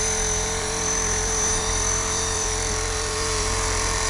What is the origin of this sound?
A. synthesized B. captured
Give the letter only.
A